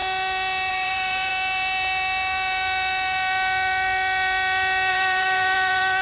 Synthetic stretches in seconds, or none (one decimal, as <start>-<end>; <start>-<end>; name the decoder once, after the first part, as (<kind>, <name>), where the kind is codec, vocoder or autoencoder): 0.7-1.3 (vocoder, BigVGAN v2); 4.9-6.0